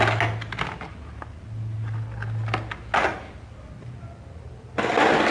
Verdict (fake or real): real